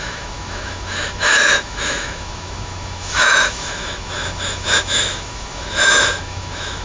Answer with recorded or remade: remade